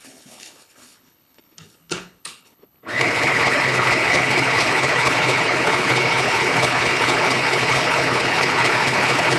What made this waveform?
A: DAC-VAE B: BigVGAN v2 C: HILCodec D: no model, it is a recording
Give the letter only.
C